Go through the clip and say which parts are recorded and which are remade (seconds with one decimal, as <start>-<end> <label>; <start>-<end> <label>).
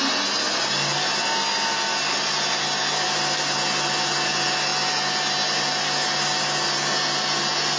0.0-7.8 recorded